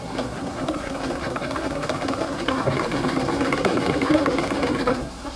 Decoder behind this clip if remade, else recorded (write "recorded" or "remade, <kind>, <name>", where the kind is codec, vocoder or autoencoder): remade, codec, SNAC